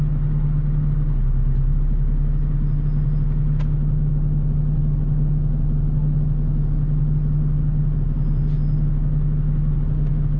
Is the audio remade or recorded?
recorded